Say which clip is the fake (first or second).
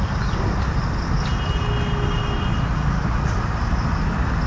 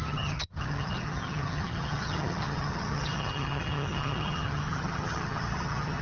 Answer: second